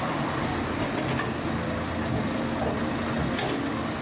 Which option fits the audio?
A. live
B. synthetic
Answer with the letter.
A